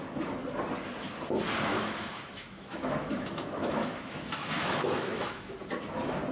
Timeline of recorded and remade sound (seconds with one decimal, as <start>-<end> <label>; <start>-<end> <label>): 0.0-1.7 recorded; 1.7-5.5 remade; 5.5-6.3 recorded